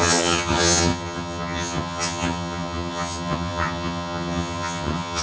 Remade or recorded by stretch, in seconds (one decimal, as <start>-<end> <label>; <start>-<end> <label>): 0.0-5.2 remade